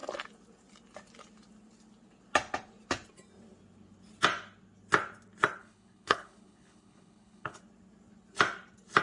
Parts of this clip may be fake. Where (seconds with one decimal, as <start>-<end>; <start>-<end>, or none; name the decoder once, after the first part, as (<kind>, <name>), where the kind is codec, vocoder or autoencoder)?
5.6-7.6 (codec, HILCodec)